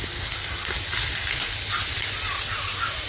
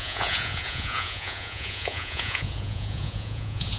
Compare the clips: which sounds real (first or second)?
first